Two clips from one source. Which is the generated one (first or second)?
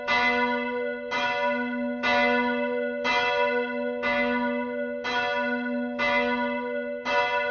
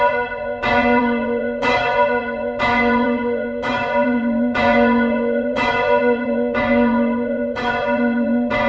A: second